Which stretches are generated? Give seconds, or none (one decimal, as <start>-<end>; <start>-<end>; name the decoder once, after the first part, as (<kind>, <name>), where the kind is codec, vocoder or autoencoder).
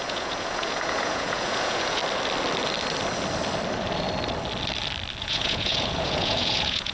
0.0-2.0 (vocoder, Vocos); 5.2-6.9